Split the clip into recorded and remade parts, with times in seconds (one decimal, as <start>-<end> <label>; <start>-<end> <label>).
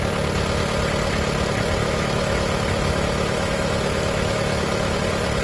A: 0.0-1.8 recorded; 1.8-5.0 remade; 5.0-5.4 recorded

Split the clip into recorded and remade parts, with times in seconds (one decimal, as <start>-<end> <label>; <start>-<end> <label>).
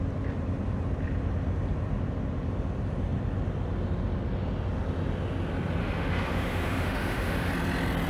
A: 0.0-5.8 recorded; 5.8-7.5 remade; 7.5-8.1 recorded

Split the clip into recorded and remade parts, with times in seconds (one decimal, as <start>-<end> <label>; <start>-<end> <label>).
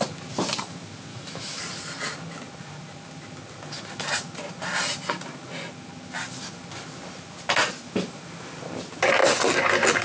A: 0.0-1.1 recorded; 1.1-1.6 remade; 1.6-10.0 recorded